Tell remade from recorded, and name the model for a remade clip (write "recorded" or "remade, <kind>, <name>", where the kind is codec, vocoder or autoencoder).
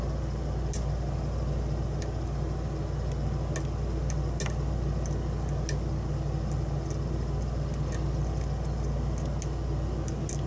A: recorded